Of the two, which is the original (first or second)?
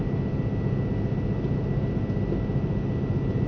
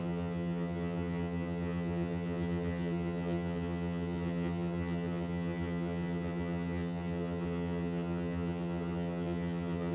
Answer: first